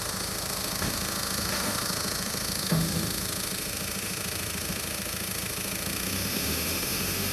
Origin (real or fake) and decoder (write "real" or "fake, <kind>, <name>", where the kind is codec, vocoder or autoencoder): fake, autoencoder, DAC-VAE